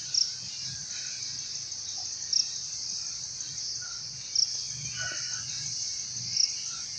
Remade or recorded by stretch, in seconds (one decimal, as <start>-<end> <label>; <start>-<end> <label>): 0.0-7.0 recorded

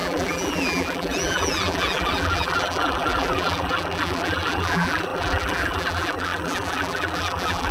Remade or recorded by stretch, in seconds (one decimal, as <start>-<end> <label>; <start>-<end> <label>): 0.0-7.7 remade